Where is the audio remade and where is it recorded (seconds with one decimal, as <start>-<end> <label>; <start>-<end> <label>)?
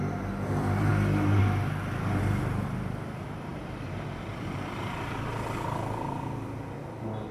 0.0-3.5 recorded; 3.5-6.8 remade; 6.8-7.3 recorded